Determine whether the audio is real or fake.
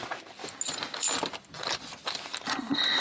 real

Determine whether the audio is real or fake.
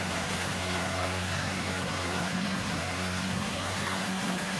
fake